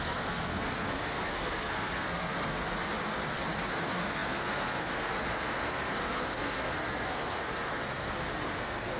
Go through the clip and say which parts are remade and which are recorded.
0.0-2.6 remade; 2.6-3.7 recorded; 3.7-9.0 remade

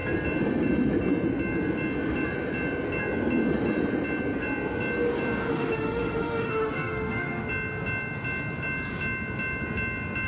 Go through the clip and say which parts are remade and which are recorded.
0.0-5.5 recorded; 5.5-7.5 remade; 7.5-10.3 recorded